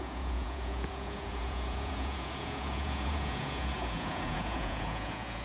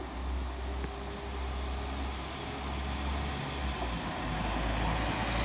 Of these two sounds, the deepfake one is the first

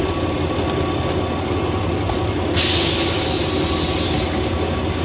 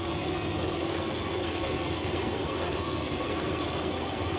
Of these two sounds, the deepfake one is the second